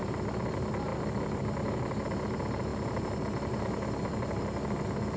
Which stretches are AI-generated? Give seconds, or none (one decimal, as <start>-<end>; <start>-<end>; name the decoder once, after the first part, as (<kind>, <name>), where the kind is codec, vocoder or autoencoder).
none